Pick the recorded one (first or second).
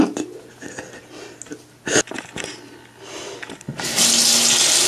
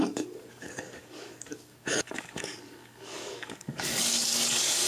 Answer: first